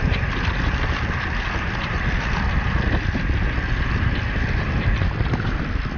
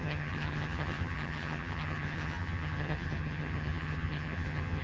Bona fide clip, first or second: first